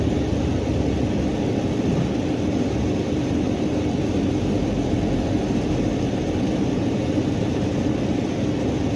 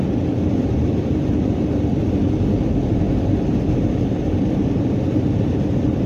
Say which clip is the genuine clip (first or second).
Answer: first